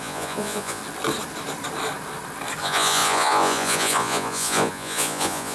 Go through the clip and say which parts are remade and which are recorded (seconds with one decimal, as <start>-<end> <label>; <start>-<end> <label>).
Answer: 0.0-0.8 remade; 0.8-2.6 recorded; 2.6-5.5 remade